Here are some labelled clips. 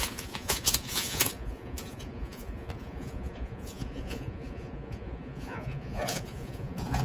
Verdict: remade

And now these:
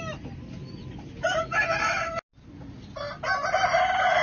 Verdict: recorded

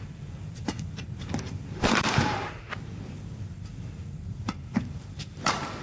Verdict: remade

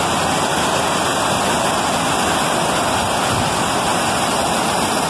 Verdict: recorded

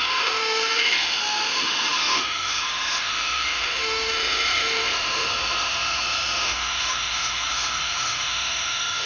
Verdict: remade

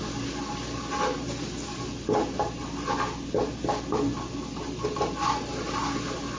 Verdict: recorded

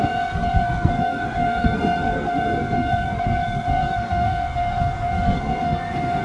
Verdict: remade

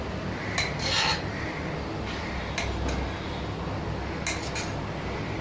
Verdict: recorded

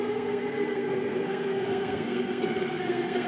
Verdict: remade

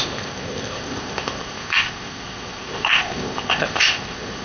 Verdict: remade